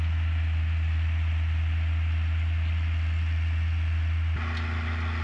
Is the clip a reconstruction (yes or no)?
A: no